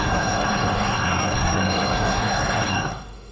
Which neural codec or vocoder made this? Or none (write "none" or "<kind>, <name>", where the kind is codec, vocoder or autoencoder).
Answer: codec, SNAC